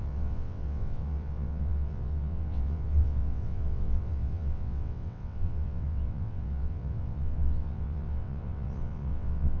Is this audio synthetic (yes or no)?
yes